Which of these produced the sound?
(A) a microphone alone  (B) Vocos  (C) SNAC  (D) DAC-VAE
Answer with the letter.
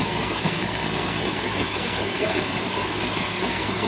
C